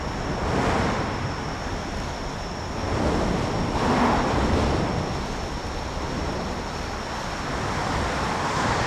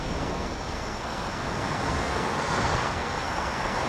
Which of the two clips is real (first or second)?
first